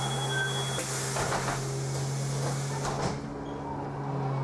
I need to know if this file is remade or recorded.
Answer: recorded